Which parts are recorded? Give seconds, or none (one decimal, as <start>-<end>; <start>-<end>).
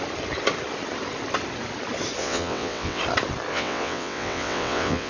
0.0-2.2; 3.0-3.5